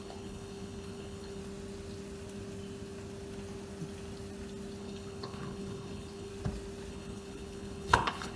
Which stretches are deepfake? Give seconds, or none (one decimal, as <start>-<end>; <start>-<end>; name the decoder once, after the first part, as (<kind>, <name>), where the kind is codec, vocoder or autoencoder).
0.0-1.4 (codec, HILCodec); 4.8-6.3; 6.9-8.4